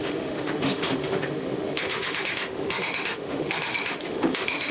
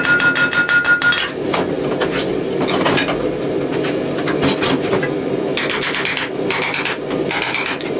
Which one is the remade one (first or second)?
first